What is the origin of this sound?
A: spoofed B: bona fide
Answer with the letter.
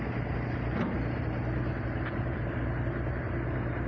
B